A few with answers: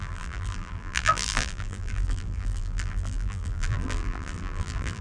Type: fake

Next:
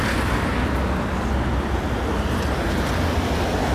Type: real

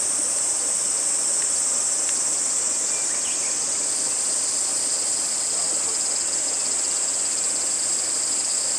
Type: real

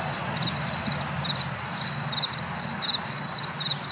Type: real